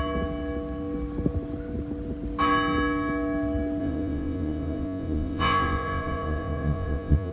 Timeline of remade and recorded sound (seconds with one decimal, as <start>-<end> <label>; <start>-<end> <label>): 0.0-3.8 recorded; 3.8-7.3 remade